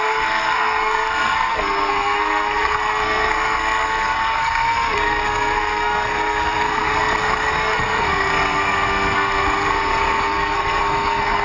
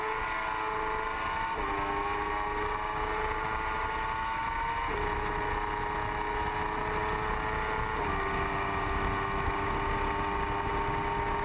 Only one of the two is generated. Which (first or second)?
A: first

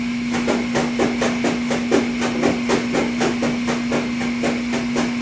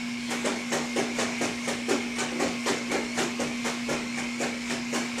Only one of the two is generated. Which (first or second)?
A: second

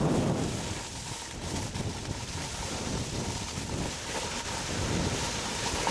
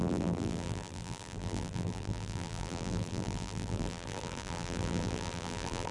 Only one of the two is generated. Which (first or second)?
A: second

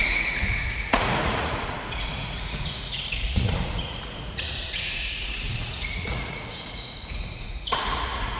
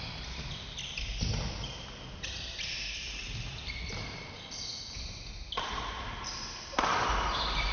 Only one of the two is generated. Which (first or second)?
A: first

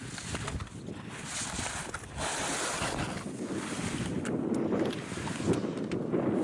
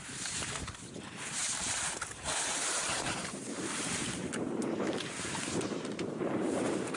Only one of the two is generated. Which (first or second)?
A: second